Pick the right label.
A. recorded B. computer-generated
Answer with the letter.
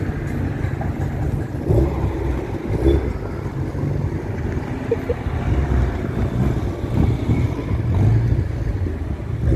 A